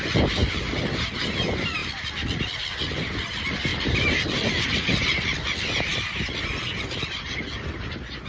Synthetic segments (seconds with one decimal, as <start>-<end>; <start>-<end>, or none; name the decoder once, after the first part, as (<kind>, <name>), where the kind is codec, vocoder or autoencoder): 1.8-2.7 (vocoder, BigVGAN v2); 3.7-5.0